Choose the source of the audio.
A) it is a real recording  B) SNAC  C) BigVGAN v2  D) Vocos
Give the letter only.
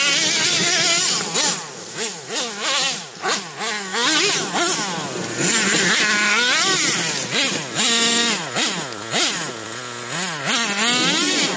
A